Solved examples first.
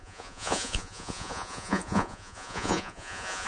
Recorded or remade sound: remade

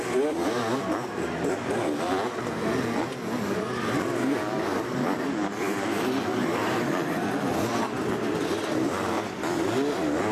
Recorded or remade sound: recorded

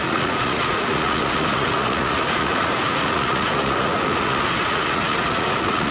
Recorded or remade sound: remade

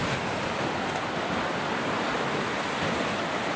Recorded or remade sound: recorded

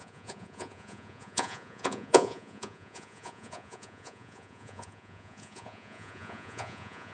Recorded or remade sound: remade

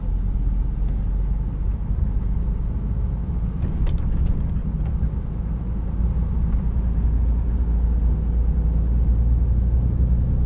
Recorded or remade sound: recorded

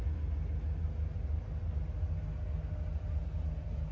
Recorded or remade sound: recorded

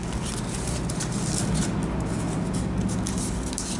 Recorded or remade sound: recorded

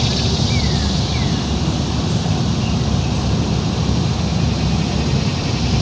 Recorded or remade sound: recorded